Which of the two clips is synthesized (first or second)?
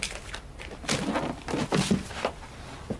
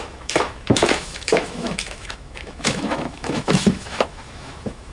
second